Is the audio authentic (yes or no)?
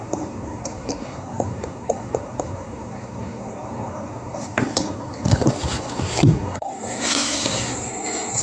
no